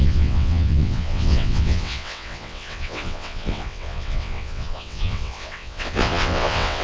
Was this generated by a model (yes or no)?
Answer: yes